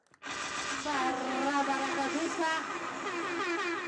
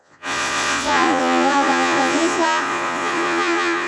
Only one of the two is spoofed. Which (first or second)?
second